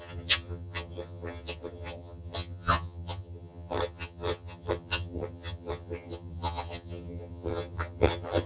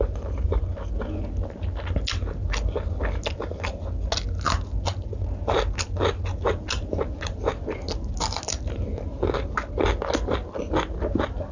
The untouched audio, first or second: second